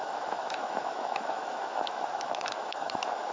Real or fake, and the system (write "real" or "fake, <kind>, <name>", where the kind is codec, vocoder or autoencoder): fake, autoencoder, DAC-VAE